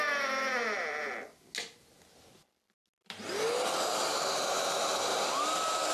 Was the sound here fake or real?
real